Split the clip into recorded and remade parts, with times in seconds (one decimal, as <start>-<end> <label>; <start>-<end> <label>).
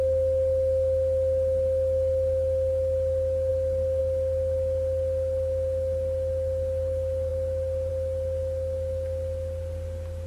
0.0-10.3 recorded